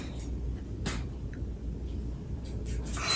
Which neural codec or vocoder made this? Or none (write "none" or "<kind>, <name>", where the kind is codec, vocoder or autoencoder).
none